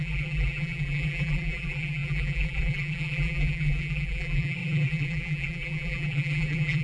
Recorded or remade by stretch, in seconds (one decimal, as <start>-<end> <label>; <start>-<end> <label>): 0.0-6.8 remade